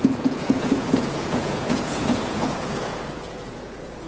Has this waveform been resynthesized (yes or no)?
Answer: yes